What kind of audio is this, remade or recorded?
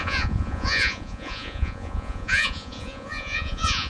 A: remade